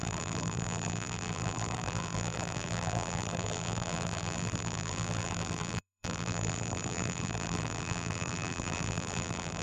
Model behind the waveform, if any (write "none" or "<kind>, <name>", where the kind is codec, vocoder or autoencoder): vocoder, BigVGAN v2